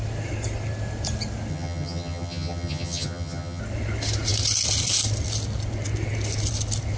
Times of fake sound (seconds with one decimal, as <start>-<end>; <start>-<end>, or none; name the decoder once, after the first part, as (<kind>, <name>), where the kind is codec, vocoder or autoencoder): 1.5-3.6 (vocoder, HiFi-GAN)